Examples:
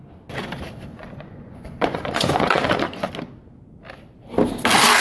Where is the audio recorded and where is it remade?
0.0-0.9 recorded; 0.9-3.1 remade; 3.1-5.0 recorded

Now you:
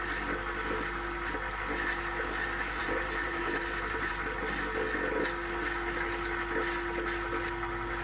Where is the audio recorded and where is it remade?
0.0-2.8 recorded; 2.8-4.1 remade; 4.1-8.0 recorded